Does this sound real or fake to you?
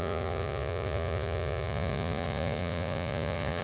fake